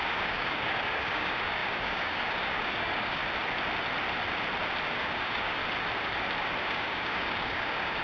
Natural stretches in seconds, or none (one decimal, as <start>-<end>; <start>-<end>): 3.2-4.9; 5.6-6.6